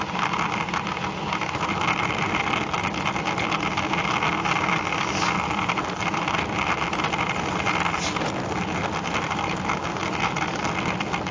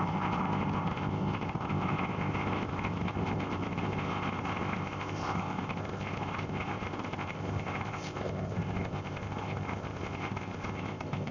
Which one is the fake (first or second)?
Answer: second